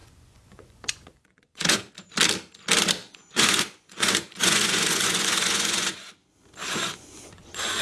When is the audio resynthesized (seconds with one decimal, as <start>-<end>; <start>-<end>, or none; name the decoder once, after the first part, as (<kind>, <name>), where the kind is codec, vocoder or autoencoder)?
0.0-1.9 (vocoder, Vocos); 3.0-6.1; 6.6-7.8